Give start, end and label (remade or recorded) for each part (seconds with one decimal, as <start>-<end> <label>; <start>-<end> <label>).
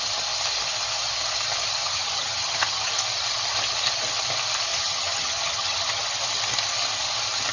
0.0-1.8 recorded; 1.8-2.9 remade; 2.9-4.7 recorded; 4.7-6.0 remade; 6.0-7.5 recorded